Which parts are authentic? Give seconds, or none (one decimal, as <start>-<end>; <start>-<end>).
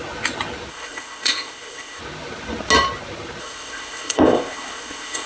0.0-0.7; 2.0-3.4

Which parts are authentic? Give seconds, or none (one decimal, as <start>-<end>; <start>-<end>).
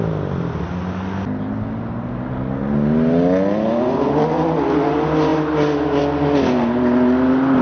0.0-7.6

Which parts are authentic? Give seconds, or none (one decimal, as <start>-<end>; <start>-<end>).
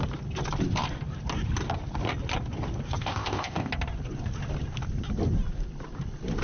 0.0-3.0; 3.7-6.4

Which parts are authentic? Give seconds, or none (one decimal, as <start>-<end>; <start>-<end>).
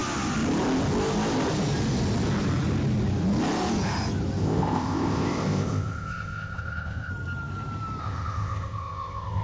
0.0-4.4; 7.1-8.0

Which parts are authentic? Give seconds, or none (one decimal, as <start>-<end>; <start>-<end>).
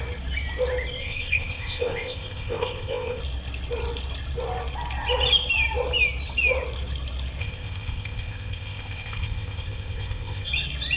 0.0-1.0; 3.2-7.4; 10.5-11.0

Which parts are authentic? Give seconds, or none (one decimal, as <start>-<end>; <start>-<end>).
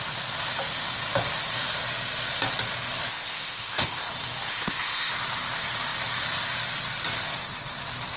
0.0-3.1; 4.1-4.5; 5.1-8.2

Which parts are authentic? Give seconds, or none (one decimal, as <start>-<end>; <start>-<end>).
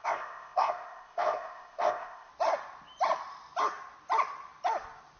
2.3-5.2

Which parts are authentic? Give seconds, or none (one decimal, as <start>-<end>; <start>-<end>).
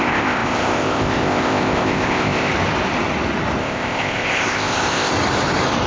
2.5-3.6; 5.1-5.9